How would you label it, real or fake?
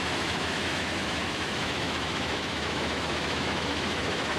fake